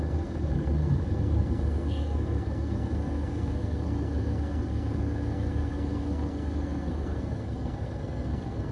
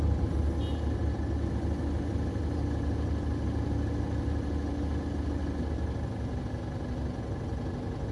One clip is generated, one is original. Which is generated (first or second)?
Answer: first